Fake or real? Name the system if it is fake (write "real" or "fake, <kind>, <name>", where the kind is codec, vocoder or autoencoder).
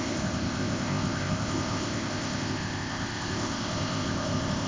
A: fake, codec, ZipCodec